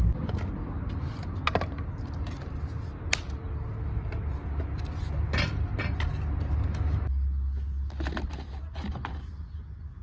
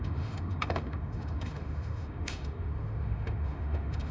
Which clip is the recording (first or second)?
first